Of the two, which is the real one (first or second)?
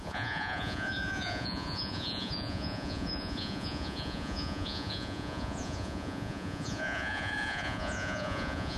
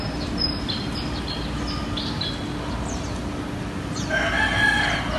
second